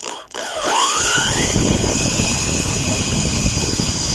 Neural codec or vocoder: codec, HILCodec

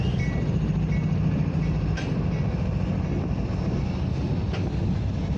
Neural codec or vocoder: none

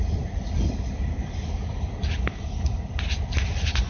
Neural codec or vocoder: none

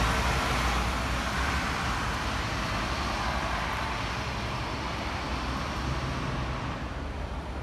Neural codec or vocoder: none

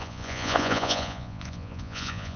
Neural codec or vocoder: vocoder, Vocos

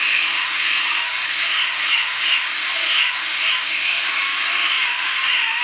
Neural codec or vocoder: autoencoder, DAC-VAE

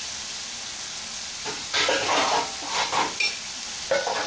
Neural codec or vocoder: vocoder, BigVGAN v2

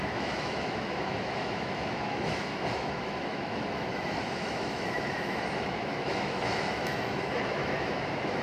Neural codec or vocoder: autoencoder, DAC-VAE